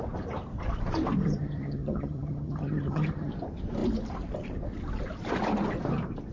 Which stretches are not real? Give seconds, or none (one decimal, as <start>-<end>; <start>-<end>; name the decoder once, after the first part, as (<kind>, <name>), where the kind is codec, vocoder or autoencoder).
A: 1.2-3.3 (vocoder, HiFi-GAN)